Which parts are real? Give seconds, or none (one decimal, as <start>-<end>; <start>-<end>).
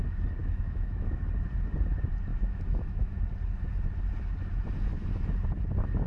0.0-0.4; 1.2-2.3; 3.2-6.1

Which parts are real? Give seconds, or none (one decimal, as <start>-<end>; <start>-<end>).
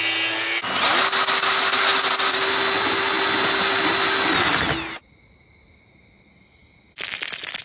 0.0-7.6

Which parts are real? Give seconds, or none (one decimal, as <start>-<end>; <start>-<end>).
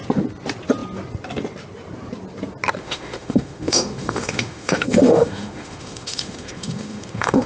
0.0-2.8